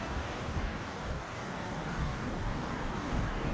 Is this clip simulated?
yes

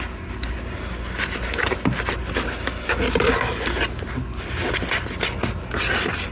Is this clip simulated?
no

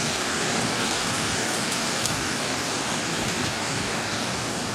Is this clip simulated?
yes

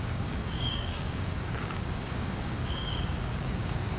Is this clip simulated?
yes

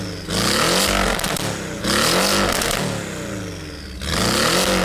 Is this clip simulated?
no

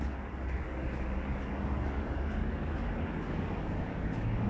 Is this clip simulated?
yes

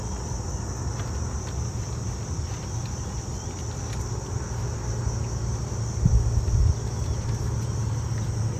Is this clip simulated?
no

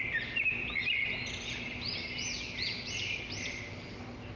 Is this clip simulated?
no